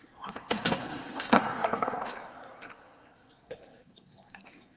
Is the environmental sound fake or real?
fake